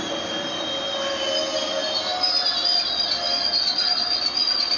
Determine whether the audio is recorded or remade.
recorded